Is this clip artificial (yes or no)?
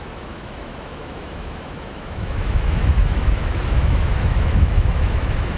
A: yes